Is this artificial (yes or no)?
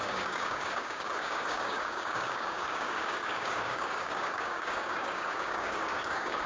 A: yes